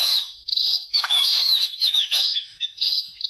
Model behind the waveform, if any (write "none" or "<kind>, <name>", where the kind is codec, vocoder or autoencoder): autoencoder, DAC-VAE